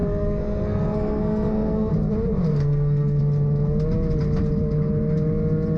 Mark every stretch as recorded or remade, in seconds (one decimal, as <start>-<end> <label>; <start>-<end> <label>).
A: 0.0-1.9 remade; 1.9-2.5 recorded; 2.5-3.2 remade; 3.2-5.8 recorded